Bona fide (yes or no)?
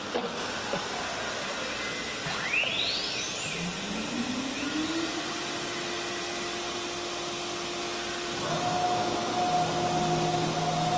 yes